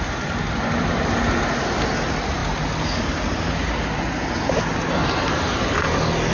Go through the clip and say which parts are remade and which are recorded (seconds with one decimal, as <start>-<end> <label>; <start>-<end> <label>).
0.0-6.3 recorded